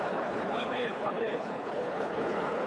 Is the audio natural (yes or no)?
no